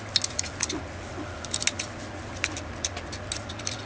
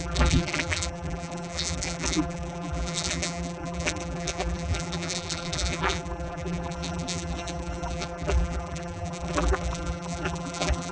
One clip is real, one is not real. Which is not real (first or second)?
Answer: second